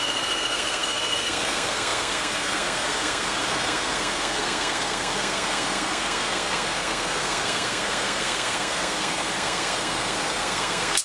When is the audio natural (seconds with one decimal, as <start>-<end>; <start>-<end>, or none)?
none